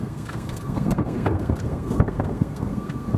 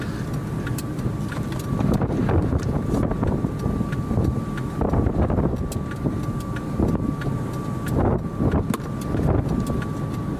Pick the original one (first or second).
second